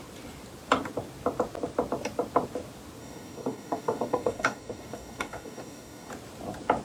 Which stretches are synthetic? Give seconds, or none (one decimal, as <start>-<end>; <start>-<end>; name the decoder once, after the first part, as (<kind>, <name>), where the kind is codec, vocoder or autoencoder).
3.0-6.1 (codec, DAC)